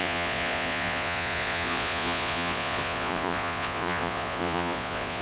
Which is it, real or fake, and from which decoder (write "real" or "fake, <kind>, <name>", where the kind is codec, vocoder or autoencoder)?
fake, vocoder, Vocos